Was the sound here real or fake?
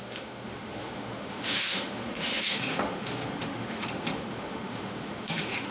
fake